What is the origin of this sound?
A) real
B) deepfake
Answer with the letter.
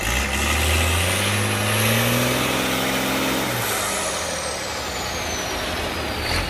A